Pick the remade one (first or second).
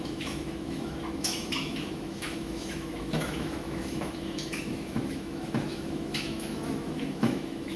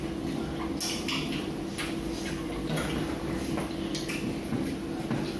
first